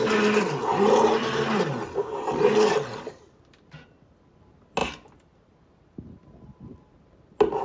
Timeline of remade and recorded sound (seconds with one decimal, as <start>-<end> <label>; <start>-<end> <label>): 0.0-7.6 recorded